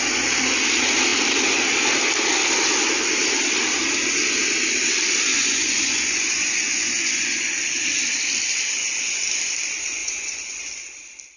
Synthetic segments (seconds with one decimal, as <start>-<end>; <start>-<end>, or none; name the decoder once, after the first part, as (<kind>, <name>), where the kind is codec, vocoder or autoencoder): 5.3-7.5 (vocoder, Vocos); 10.0-10.6